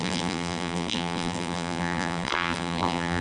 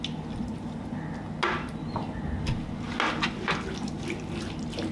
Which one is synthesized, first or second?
first